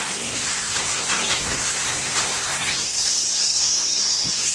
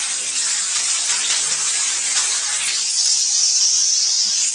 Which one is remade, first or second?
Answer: first